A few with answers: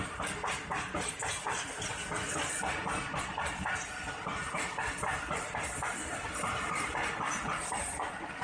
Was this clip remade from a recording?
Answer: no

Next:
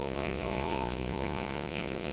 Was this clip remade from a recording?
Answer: yes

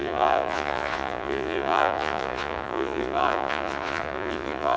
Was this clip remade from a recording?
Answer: yes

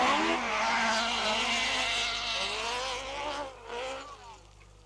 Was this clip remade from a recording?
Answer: no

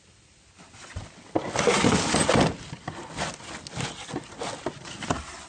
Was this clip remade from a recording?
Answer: no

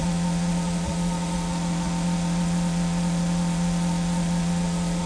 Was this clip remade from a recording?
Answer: yes